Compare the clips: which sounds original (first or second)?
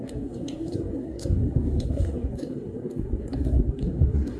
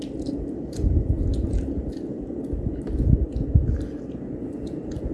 second